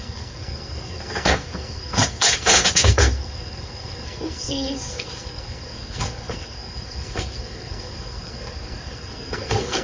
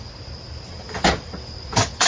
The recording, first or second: second